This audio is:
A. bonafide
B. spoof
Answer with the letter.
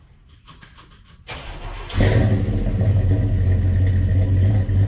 A